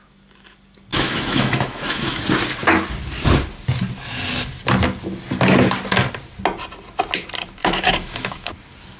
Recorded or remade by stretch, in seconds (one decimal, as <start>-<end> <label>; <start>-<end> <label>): 0.0-0.9 recorded; 0.9-2.2 remade; 2.2-7.6 recorded; 7.6-8.5 remade; 8.5-9.0 recorded